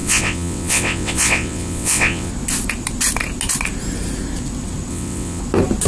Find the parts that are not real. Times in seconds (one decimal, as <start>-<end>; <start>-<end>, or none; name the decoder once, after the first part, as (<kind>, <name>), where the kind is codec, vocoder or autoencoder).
0.0-2.3 (vocoder, WaveNeXt); 4.9-5.4